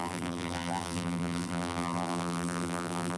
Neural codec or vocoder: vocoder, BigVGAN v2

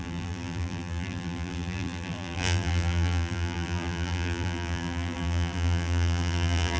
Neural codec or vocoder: vocoder, BigVGAN v2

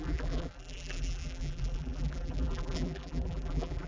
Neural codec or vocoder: vocoder, BigVGAN v2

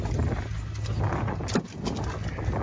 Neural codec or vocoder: none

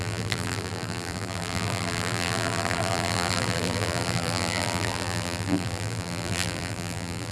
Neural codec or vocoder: vocoder, BigVGAN v2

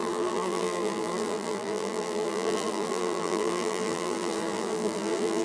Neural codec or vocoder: vocoder, BigVGAN v2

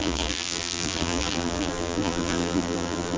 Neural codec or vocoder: vocoder, BigVGAN v2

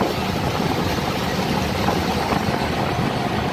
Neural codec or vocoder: none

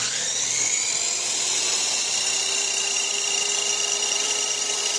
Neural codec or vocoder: vocoder, BigVGAN v2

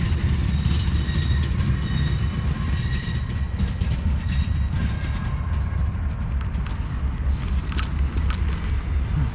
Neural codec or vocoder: none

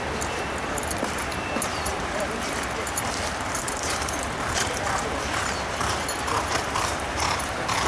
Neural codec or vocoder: vocoder, BigVGAN v2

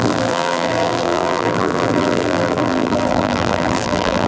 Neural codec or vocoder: vocoder, BigVGAN v2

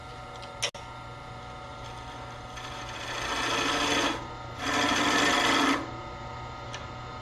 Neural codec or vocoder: none